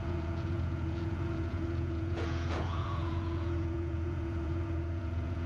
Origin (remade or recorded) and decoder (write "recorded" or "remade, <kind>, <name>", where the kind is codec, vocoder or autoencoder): remade, vocoder, Vocos